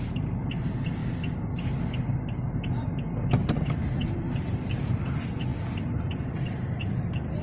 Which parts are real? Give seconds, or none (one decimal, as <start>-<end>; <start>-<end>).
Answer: 1.0-3.0